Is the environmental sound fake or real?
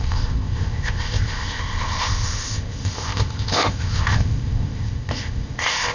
fake